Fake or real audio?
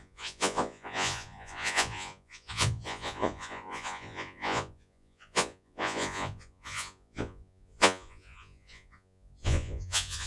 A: fake